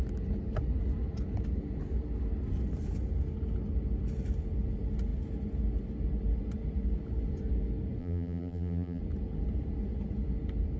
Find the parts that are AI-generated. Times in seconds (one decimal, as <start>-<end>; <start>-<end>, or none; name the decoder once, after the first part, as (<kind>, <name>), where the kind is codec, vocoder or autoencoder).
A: 8.0-9.0 (vocoder, BigVGAN v2)